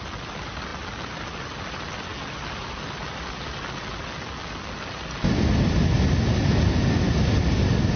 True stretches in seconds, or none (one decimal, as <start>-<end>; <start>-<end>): 0.0-8.0